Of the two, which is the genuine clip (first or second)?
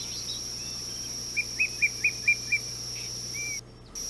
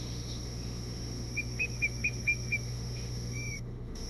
first